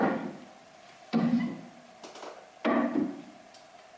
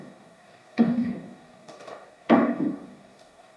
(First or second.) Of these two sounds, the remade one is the second